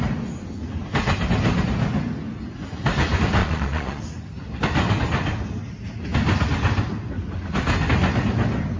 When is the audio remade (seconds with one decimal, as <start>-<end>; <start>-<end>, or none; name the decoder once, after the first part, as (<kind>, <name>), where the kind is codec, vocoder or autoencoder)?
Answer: 3.4-4.0 (vocoder, Vocos)